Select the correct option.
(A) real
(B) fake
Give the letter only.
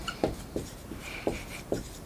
B